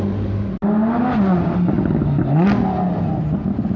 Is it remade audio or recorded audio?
recorded